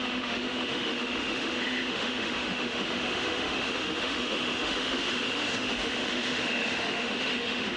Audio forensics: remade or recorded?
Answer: remade